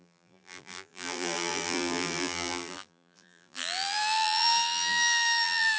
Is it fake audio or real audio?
fake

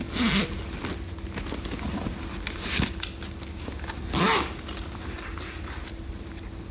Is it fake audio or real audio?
real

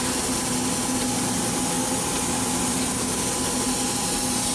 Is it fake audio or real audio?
real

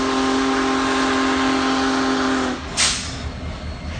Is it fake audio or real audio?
real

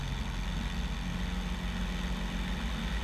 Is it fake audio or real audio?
real